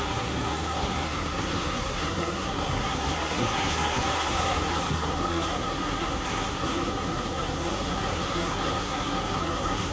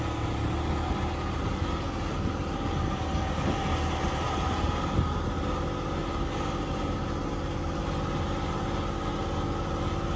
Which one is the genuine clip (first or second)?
second